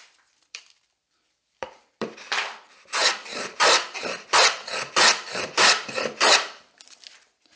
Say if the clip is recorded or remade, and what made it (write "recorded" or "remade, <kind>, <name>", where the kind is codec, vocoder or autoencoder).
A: remade, vocoder, BigVGAN v2